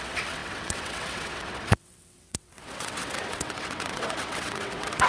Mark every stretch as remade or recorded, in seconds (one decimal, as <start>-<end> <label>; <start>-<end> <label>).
0.0-5.1 remade